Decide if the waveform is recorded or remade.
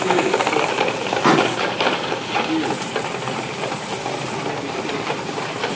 recorded